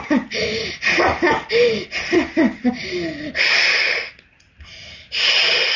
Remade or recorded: recorded